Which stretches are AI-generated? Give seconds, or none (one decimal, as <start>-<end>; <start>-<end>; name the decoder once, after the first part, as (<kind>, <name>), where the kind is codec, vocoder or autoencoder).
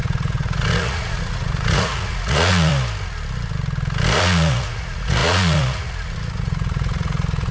0.0-2.7 (vocoder, Vocos); 4.2-7.5